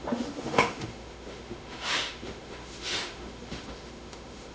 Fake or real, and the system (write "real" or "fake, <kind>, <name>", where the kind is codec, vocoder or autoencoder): fake, autoencoder, DAC-VAE